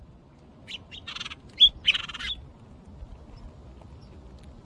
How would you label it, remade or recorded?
recorded